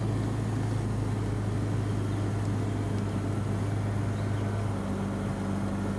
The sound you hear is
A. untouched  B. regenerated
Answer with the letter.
A